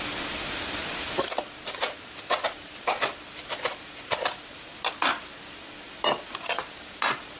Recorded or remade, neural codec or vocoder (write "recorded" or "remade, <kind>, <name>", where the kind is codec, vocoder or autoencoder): recorded